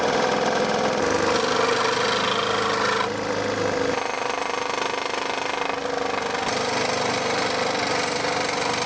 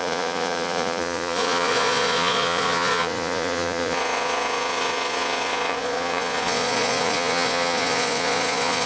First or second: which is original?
first